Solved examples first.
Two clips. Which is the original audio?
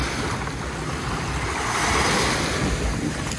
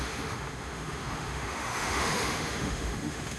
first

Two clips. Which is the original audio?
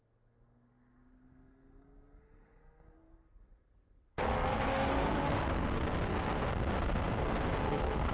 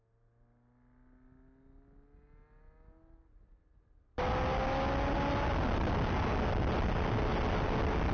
second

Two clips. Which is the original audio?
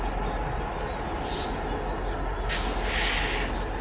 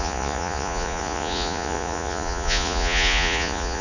first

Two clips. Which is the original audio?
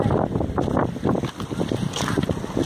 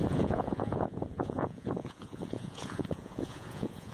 first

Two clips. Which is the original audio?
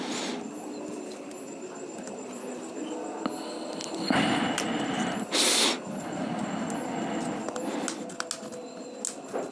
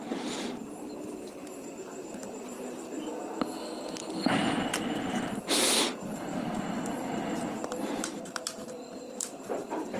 first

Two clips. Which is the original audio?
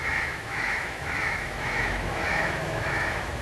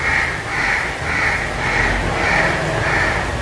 second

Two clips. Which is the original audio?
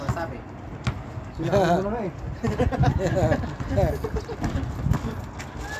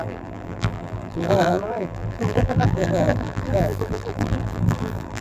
first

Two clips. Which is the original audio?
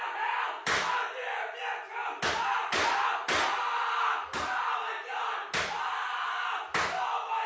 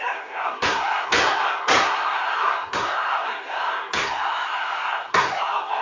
first